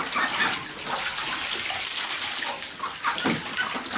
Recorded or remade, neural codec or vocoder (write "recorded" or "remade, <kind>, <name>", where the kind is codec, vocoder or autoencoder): recorded